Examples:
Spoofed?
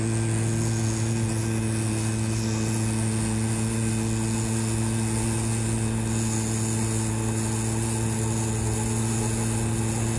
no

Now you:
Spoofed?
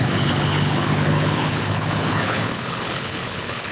yes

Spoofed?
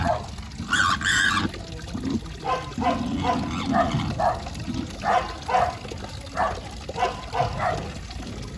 no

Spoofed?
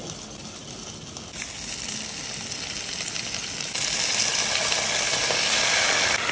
no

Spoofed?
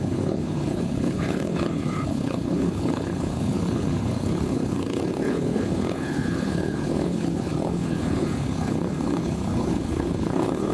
yes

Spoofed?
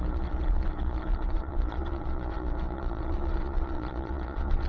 yes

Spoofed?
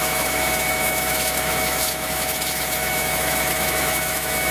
yes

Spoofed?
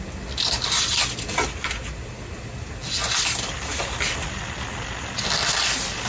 no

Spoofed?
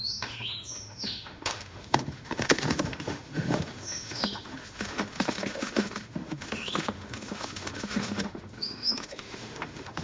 yes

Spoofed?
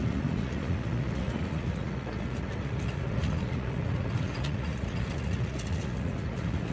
yes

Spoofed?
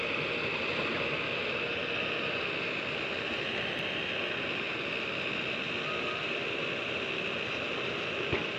no